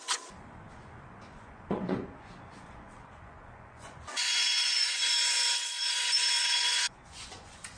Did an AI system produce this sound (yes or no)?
yes